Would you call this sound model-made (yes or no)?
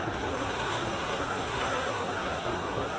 yes